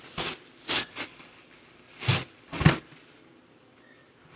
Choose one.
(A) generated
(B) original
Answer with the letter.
B